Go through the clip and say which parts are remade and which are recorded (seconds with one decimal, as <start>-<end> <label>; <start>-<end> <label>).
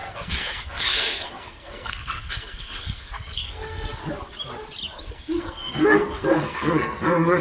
0.0-4.0 remade; 4.0-5.0 recorded; 5.0-7.4 remade